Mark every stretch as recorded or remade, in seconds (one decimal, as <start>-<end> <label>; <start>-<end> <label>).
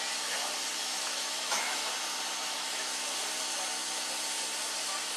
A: 0.0-0.8 recorded; 0.8-1.9 remade; 1.9-2.4 recorded; 2.4-3.2 remade; 3.2-5.2 recorded